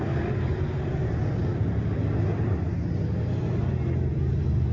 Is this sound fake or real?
real